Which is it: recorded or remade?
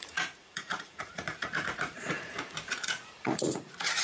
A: remade